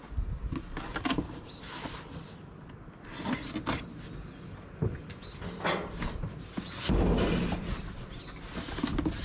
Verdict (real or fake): real